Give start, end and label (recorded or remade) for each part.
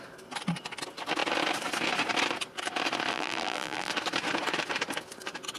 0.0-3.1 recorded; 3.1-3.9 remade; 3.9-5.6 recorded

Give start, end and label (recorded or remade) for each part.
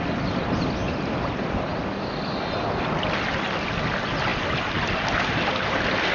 0.0-6.1 recorded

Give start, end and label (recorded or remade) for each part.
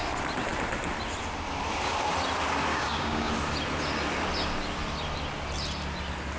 0.0-2.7 recorded; 2.7-3.3 remade; 3.3-6.4 recorded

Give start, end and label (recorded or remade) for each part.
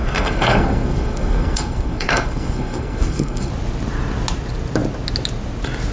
0.0-3.5 remade; 3.5-5.9 recorded